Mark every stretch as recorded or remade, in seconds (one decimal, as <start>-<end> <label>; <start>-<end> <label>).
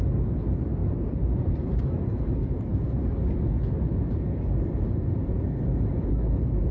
0.0-0.8 recorded; 0.8-1.8 remade; 1.8-2.7 recorded; 2.7-6.7 remade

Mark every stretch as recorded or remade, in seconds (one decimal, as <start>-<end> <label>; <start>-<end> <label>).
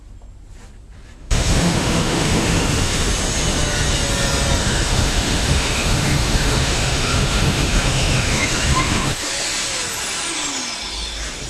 0.0-1.2 recorded; 1.2-3.1 remade; 3.1-4.6 recorded; 4.6-9.3 remade; 9.3-11.5 recorded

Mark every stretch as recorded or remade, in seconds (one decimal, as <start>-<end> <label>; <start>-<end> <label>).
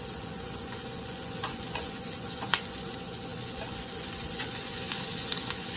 0.0-5.8 remade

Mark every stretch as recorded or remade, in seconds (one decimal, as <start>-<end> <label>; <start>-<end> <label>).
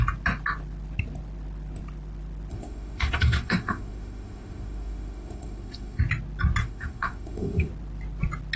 0.0-2.5 recorded; 2.5-6.0 remade; 6.0-6.6 recorded; 6.6-7.7 remade; 7.7-8.6 recorded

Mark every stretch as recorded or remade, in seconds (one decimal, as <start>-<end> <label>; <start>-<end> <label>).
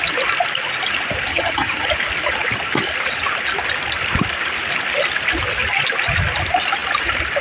0.0-1.3 recorded; 1.3-1.9 remade; 1.9-7.4 recorded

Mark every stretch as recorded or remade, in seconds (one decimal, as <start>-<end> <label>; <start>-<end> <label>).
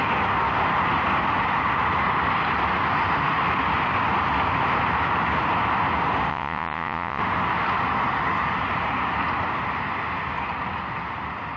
0.0-6.3 recorded; 6.3-7.2 remade; 7.2-11.6 recorded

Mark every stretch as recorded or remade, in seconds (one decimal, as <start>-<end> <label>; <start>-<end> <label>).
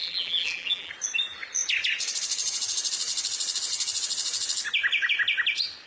0.0-0.9 remade; 0.9-5.9 recorded